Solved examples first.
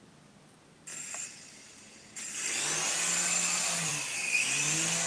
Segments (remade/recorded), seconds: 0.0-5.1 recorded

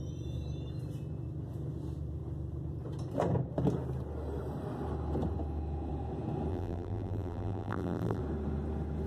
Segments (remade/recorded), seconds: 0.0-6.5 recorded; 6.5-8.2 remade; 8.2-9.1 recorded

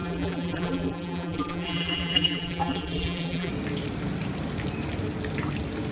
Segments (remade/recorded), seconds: 0.0-3.5 remade; 3.5-5.9 recorded